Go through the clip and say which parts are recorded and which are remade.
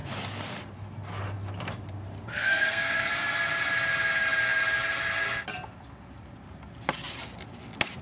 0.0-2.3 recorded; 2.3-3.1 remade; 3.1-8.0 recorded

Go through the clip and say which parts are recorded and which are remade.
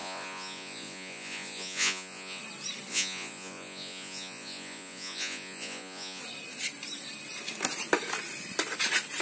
0.0-2.4 remade; 2.4-2.9 recorded; 2.9-6.2 remade; 6.2-9.2 recorded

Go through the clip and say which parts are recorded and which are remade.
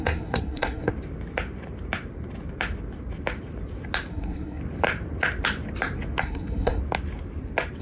0.0-0.9 remade; 0.9-4.1 recorded; 4.1-4.6 remade; 4.6-6.2 recorded; 6.2-6.8 remade; 6.8-7.8 recorded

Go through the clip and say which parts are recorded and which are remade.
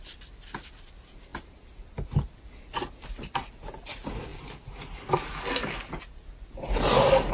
0.0-7.3 recorded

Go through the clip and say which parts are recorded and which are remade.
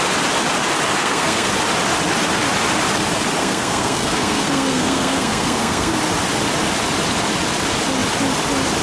0.0-1.0 recorded; 1.0-1.5 remade; 1.5-3.4 recorded; 3.4-6.0 remade; 6.0-8.8 recorded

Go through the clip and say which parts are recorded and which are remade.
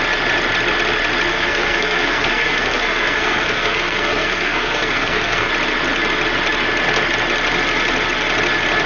0.0-1.3 recorded; 1.3-5.5 remade; 5.5-8.9 recorded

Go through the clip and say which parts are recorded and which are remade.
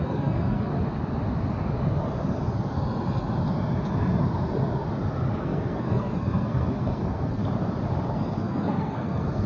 0.0-0.7 remade; 0.7-5.4 recorded; 5.4-7.4 remade; 7.4-8.1 recorded; 8.1-9.5 remade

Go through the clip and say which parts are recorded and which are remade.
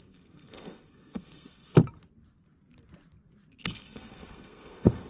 0.0-1.8 remade; 1.8-3.6 recorded; 3.6-5.1 remade